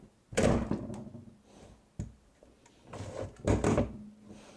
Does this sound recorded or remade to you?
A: recorded